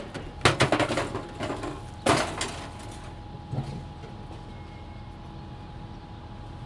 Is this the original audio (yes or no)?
yes